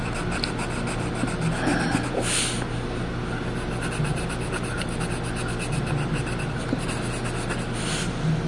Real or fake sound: real